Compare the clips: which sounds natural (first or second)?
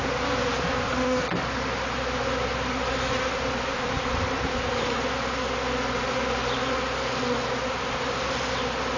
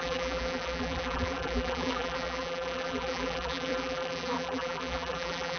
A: first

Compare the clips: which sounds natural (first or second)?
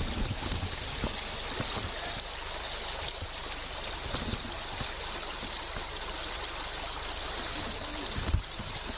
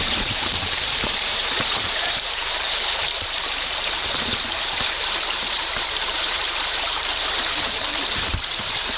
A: first